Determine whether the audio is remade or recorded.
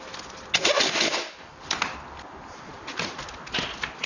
recorded